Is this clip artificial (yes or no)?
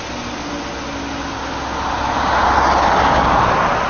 no